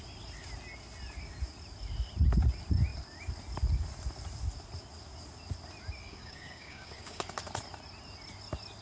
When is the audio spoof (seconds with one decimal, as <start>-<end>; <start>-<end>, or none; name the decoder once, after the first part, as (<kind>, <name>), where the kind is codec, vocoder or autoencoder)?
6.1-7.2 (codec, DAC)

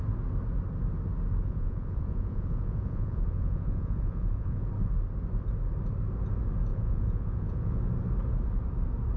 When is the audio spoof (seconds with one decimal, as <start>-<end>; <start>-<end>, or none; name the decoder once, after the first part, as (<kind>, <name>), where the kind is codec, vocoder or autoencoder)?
1.4-4.7 (vocoder, Vocos); 6.7-7.8

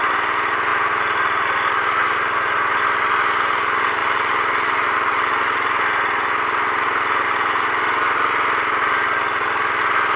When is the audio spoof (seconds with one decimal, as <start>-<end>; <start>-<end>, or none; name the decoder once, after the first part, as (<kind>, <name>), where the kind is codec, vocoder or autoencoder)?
4.0-5.1 (vocoder, BigVGAN v2)

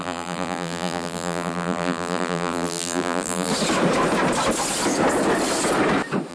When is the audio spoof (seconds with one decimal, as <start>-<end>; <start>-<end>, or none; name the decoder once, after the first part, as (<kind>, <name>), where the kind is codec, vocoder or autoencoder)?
0.0-3.5 (vocoder, BigVGAN v2)

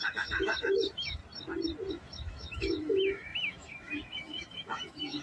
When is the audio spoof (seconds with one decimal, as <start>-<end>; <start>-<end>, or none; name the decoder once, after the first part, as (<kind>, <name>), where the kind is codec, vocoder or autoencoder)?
0.0-1.2 (autoencoder, DAC-VAE); 1.9-5.2